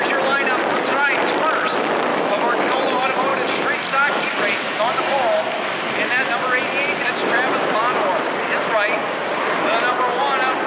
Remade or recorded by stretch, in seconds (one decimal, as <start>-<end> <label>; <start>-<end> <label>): 0.0-2.1 recorded; 2.1-2.7 remade; 2.7-10.7 recorded